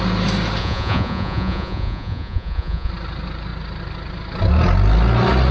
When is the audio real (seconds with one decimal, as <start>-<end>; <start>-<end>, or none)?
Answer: 0.0-0.6; 2.9-5.5